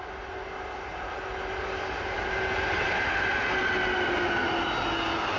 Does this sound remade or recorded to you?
recorded